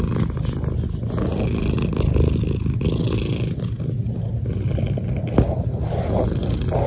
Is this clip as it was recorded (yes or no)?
yes